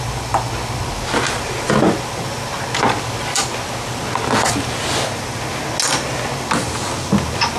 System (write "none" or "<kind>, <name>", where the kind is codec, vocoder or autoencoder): none